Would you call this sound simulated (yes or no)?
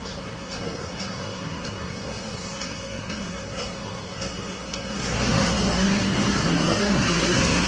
yes